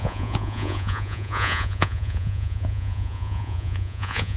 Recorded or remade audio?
remade